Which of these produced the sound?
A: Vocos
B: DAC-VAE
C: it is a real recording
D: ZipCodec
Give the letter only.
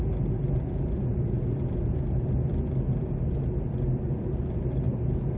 C